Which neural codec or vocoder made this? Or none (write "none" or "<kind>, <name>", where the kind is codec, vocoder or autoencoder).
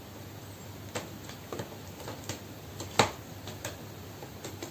none